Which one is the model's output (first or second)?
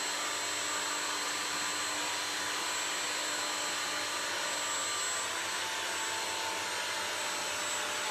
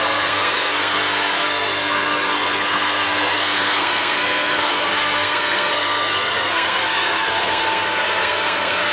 second